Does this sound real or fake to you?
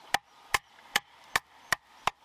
real